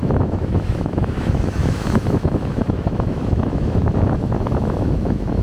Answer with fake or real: fake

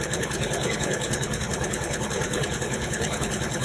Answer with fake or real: fake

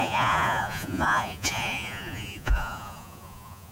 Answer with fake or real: fake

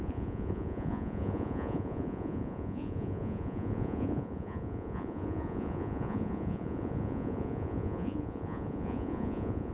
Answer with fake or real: fake